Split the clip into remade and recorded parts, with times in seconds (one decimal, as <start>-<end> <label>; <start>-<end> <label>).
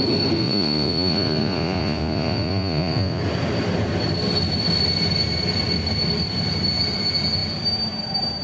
0.0-0.4 recorded; 0.4-3.2 remade; 3.2-8.4 recorded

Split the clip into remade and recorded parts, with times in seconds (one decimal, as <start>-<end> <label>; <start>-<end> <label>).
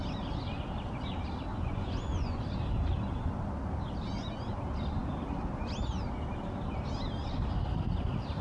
0.0-1.5 recorded; 1.5-2.4 remade; 2.4-8.4 recorded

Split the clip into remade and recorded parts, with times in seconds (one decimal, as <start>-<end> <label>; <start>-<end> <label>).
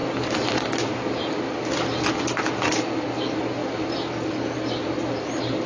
0.0-5.7 recorded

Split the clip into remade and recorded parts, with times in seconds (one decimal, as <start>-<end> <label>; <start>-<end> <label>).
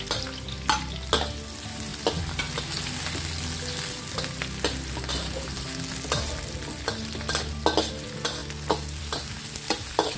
0.0-10.2 recorded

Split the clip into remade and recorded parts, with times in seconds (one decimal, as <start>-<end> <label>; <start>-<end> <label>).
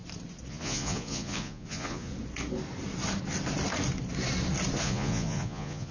0.0-0.5 recorded; 0.5-2.1 remade; 2.1-4.8 recorded; 4.8-5.9 remade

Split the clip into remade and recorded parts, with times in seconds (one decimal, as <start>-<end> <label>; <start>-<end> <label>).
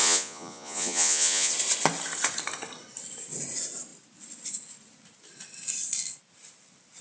0.0-1.5 remade; 1.5-7.0 recorded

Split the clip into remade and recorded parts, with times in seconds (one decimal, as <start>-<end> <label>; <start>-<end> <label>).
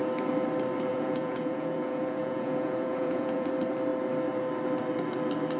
0.0-0.9 recorded; 0.9-3.5 remade; 3.5-5.6 recorded